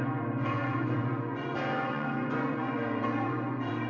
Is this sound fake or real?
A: fake